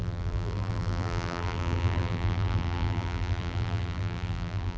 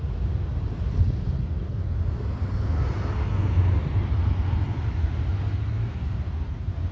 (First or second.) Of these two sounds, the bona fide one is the second